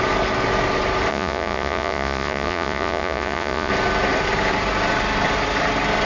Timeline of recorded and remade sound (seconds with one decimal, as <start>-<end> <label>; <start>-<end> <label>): 0.0-1.1 recorded; 1.1-3.7 remade; 3.7-6.1 recorded

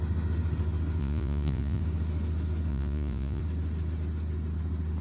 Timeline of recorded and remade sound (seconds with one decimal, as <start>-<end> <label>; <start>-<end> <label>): 0.0-1.0 recorded; 1.0-1.8 remade; 1.8-2.7 recorded; 2.7-3.4 remade; 3.4-5.0 recorded

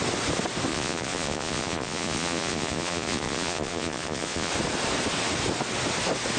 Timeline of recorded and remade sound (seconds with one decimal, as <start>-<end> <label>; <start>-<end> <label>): 0.0-0.7 recorded; 0.7-4.5 remade; 4.5-6.4 recorded

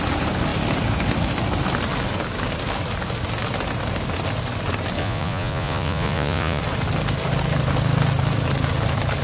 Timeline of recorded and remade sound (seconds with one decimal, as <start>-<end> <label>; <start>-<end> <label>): 0.0-5.0 recorded; 5.0-6.6 remade; 6.6-9.2 recorded

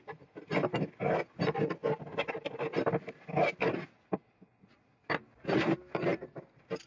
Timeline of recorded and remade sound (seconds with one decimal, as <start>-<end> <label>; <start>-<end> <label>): 0.0-6.9 recorded